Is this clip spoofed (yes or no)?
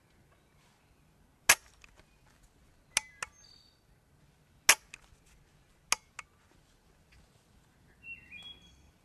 no